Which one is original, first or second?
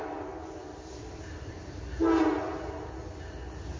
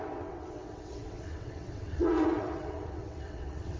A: first